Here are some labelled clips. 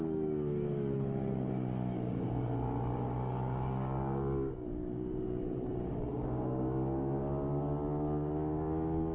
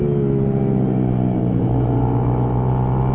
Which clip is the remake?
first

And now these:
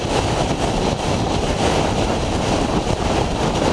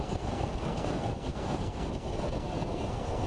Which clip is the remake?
second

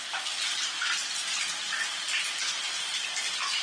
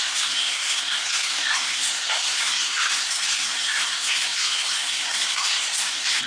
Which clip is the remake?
second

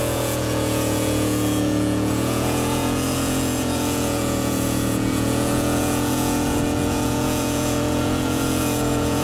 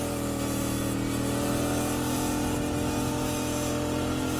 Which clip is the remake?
first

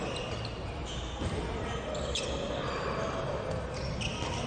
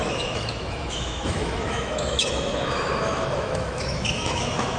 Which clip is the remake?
second